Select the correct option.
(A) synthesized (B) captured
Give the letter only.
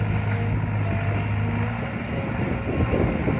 B